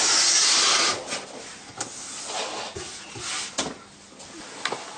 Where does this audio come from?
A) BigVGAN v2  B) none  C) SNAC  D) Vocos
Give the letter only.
B